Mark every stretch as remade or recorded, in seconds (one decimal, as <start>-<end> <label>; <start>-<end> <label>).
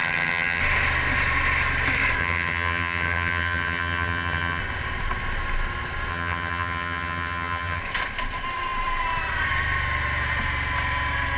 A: 0.0-0.6 remade; 0.6-2.2 recorded; 2.2-4.6 remade; 4.6-6.1 recorded; 6.1-7.8 remade; 7.8-11.4 recorded